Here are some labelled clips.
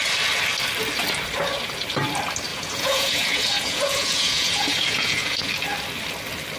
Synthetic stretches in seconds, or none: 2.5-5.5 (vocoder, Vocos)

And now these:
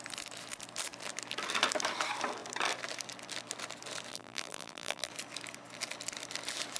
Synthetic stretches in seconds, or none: 4.1-5.1 (vocoder, BigVGAN v2)

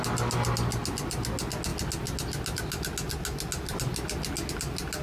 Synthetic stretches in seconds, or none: none